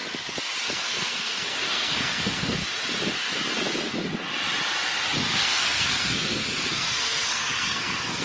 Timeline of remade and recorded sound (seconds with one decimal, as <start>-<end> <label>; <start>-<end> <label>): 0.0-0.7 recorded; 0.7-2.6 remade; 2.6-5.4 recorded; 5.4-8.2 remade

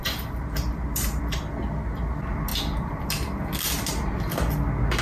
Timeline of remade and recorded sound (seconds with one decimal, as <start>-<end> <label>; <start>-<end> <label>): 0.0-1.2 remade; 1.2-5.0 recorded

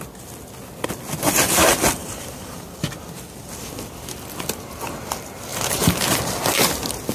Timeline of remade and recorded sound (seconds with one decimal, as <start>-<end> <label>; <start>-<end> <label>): 0.0-2.0 recorded; 2.0-2.7 remade; 2.7-5.5 recorded; 5.5-6.2 remade; 6.2-7.1 recorded

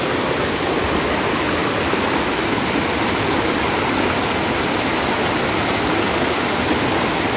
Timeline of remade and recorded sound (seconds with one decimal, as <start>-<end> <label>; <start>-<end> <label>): 0.0-7.4 recorded

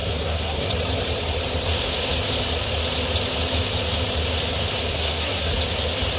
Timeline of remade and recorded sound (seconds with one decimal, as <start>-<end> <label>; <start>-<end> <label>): 0.0-0.7 remade; 0.7-4.9 recorded; 4.9-5.5 remade; 5.5-6.2 recorded